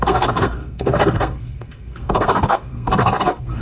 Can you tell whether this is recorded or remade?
remade